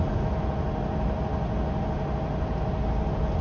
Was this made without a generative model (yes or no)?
yes